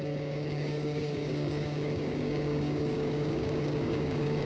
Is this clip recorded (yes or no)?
no